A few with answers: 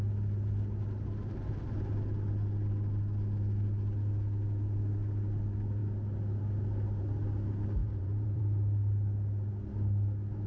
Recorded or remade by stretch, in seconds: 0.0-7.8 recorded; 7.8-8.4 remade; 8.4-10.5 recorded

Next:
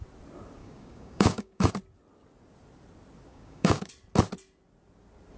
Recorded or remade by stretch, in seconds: 0.0-0.6 recorded; 0.6-1.7 remade; 1.7-3.3 recorded; 3.3-3.9 remade; 3.9-5.4 recorded

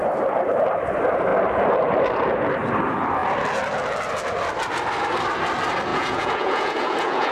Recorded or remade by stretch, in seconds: 0.0-5.9 recorded; 5.9-7.3 remade